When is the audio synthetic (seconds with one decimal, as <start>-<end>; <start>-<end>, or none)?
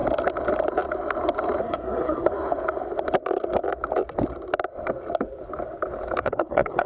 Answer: 1.6-2.3; 6.2-6.9